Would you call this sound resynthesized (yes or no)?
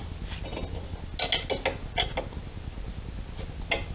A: no